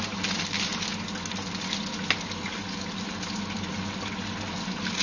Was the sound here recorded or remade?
recorded